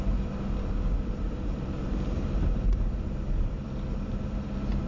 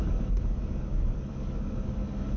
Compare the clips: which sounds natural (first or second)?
first